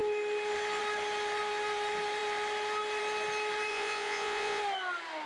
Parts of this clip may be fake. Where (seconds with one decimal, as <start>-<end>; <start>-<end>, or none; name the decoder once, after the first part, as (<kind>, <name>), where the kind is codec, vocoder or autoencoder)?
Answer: 3.7-4.6 (vocoder, Vocos)